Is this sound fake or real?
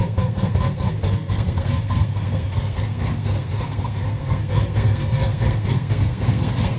fake